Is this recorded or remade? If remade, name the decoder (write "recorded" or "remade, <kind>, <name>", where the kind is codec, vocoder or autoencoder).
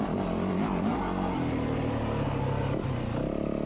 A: recorded